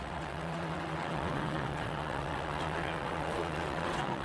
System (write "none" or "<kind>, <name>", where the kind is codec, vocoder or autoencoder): vocoder, WaveNeXt